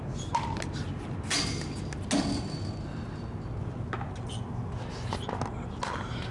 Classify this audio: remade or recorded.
recorded